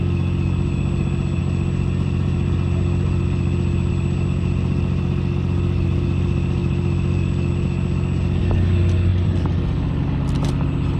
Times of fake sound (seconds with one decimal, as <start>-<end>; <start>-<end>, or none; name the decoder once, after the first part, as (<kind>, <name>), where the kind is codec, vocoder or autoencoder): none